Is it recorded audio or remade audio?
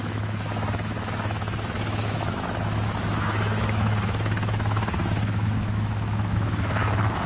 remade